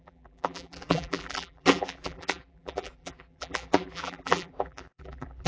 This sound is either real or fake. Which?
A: fake